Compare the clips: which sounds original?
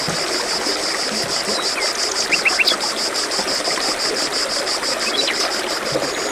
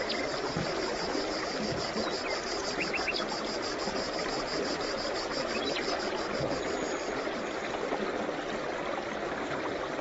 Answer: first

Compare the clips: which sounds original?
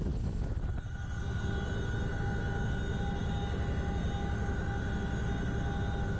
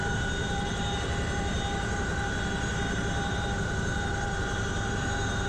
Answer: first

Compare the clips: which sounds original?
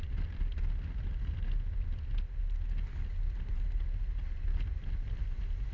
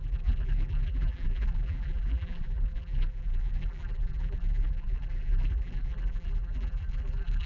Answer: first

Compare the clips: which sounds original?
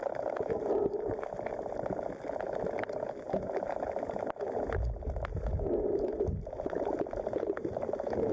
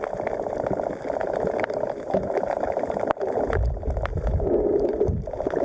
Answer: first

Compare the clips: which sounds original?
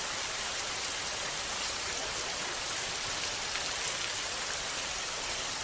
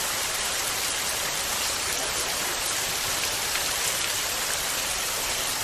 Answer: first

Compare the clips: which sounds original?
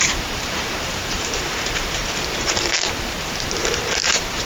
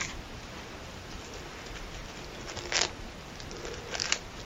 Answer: second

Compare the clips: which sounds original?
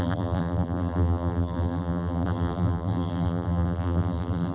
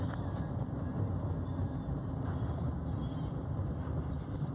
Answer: second